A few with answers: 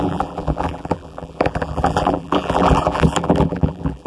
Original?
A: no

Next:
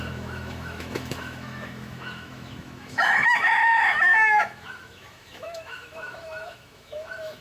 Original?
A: no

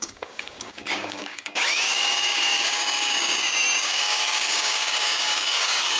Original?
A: no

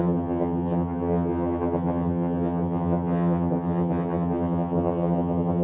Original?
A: no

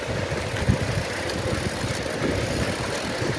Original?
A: yes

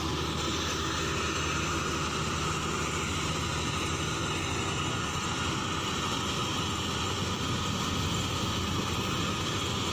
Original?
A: yes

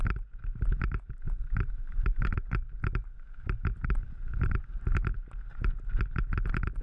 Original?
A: yes